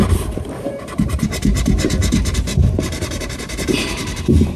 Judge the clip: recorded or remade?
remade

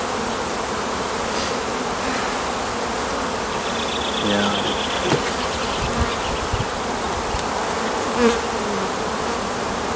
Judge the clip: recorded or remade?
recorded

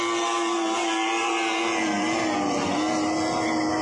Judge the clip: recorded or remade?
recorded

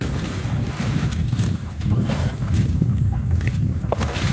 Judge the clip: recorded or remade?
remade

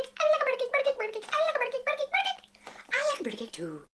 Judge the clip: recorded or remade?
remade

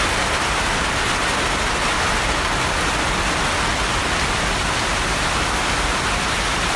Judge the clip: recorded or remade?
recorded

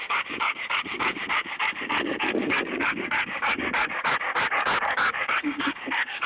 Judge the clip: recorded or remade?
remade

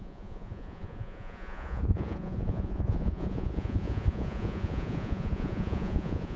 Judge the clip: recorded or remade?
remade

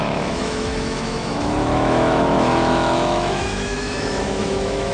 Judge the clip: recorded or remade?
remade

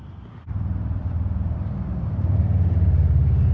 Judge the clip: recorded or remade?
remade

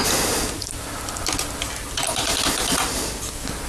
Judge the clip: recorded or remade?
recorded